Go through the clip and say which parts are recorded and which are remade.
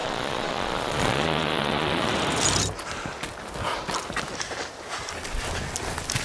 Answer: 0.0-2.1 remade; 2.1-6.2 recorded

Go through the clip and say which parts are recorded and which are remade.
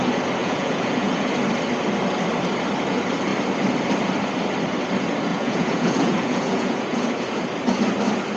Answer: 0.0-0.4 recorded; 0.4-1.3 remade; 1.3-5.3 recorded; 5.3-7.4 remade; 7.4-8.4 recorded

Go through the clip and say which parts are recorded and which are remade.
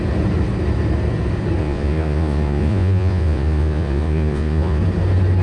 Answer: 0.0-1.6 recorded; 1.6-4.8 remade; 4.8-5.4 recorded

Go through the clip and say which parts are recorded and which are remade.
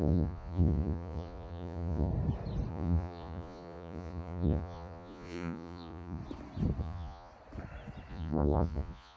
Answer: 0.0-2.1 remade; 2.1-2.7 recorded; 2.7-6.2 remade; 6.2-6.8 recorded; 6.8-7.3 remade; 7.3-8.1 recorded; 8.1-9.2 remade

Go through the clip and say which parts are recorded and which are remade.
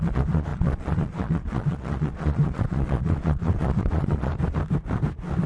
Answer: 0.0-4.3 remade; 4.3-5.5 recorded